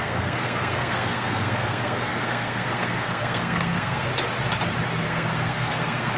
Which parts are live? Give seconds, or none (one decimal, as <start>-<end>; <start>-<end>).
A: 4.1-5.0